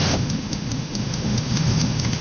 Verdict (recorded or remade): remade